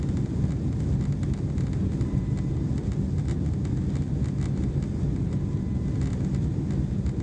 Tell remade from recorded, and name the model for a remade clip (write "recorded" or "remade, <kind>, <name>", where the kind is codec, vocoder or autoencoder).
recorded